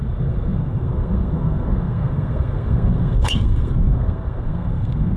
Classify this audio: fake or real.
fake